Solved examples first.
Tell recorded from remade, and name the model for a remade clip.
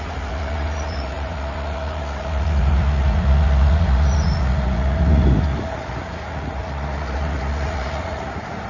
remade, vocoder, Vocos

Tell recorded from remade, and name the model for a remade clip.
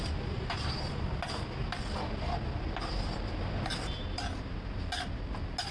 recorded